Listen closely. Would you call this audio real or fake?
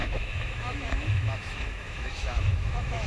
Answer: fake